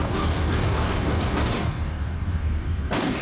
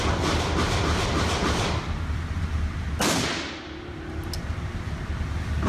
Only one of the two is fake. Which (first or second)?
first